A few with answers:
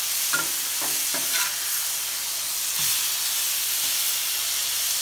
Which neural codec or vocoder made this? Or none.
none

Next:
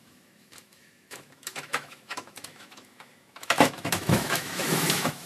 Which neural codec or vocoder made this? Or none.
autoencoder, DAC-VAE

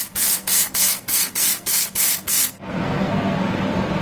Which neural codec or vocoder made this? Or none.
codec, SNAC